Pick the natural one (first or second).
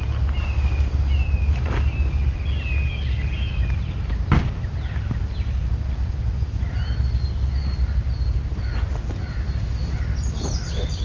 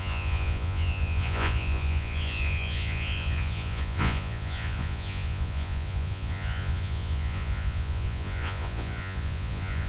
first